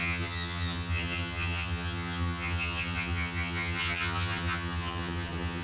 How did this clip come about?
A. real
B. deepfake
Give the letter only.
B